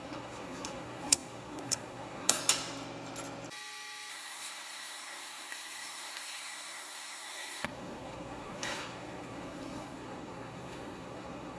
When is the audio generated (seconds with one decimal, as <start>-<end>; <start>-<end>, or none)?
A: 0.0-2.4; 4.1-11.6